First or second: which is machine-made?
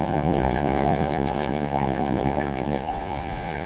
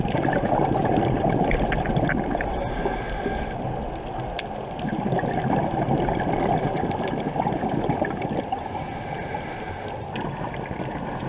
first